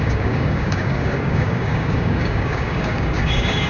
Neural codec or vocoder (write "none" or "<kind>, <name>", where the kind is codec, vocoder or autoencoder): codec, DAC